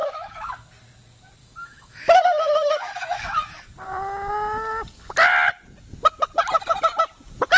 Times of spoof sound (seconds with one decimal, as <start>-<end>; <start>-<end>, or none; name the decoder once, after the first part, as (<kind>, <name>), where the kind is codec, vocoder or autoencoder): 0.0-0.5 (autoencoder, DAC-VAE); 1.4-2.2; 2.6-3.6